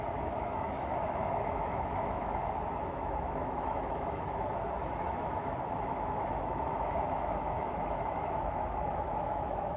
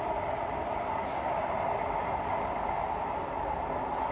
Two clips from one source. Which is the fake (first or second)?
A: first